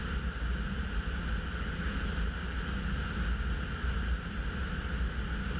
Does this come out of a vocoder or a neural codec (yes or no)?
no